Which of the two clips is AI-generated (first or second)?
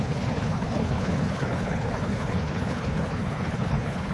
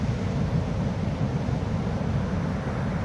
first